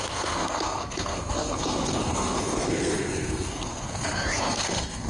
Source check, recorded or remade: remade